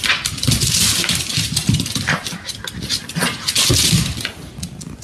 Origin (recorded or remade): recorded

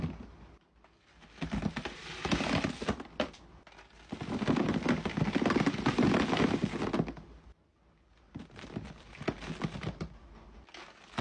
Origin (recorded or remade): recorded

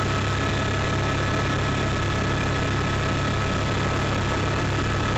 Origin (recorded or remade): recorded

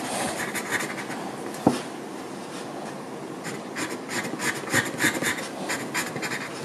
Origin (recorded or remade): recorded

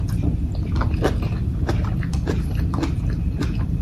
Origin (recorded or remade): recorded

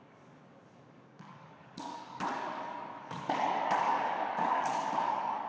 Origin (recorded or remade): remade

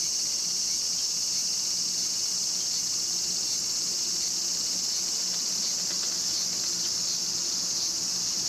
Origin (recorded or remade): recorded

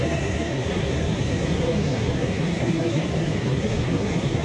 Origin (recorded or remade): remade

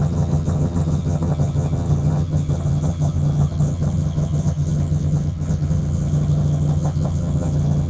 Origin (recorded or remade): remade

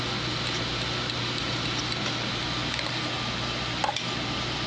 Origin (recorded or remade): recorded